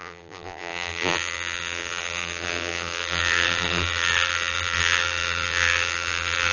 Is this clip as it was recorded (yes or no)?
no